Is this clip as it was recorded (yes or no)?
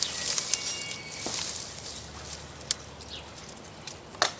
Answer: yes